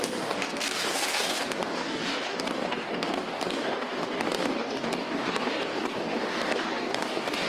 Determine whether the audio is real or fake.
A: fake